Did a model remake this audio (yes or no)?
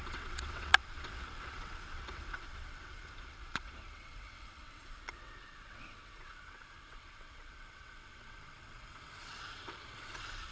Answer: yes